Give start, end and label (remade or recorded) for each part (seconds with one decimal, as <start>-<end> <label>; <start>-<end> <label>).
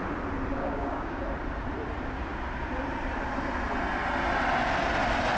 0.0-0.6 recorded; 0.6-1.2 remade; 1.2-5.4 recorded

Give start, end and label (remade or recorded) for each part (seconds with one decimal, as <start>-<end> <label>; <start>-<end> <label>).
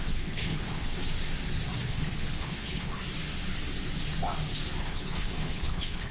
0.0-1.0 remade; 1.0-1.8 recorded; 1.8-3.0 remade; 3.0-4.8 recorded; 4.8-6.1 remade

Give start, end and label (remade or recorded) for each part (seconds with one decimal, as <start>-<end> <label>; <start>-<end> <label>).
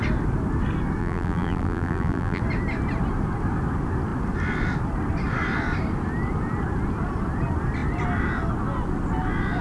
0.0-1.0 recorded; 1.0-2.4 remade; 2.4-9.6 recorded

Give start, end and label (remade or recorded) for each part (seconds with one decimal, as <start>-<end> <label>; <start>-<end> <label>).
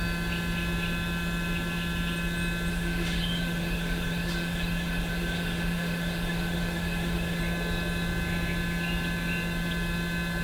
0.0-2.7 recorded; 2.7-7.4 remade; 7.4-10.4 recorded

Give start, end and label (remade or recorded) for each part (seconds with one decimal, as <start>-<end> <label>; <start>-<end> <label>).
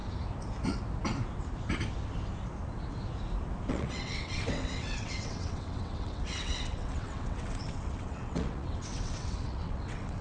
0.0-3.7 recorded; 3.7-10.2 remade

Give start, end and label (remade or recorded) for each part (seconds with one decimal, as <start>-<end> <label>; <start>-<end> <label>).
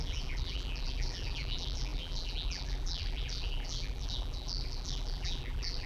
0.0-5.9 remade